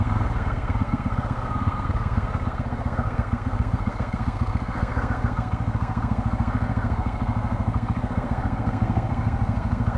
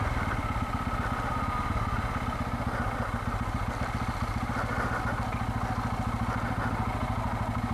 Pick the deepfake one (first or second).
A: first